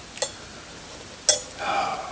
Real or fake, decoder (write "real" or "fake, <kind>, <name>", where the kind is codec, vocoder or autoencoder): real